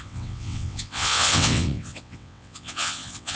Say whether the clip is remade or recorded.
remade